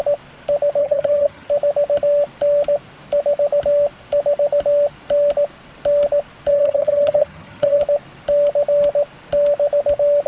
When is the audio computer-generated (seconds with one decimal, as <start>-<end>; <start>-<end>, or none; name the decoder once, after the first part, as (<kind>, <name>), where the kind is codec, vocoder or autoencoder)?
0.8-1.5 (vocoder, HiFi-GAN); 6.5-7.8